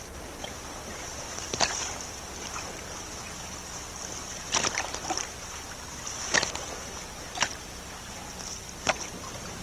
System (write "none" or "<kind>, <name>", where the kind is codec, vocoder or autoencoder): none